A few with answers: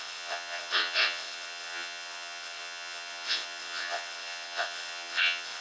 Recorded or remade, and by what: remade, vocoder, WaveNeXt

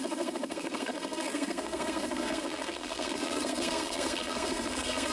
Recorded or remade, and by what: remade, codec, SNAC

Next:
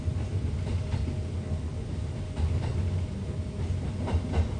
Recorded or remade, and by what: recorded